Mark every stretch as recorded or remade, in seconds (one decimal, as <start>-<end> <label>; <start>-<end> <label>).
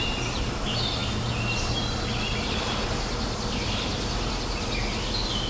0.0-5.5 recorded